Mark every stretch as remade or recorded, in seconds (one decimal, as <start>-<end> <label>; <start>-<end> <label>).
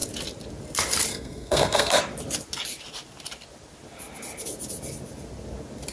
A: 0.0-1.1 recorded; 1.1-2.0 remade; 2.0-5.9 recorded